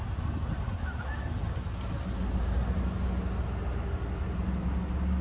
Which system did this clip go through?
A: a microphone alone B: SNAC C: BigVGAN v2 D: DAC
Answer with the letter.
A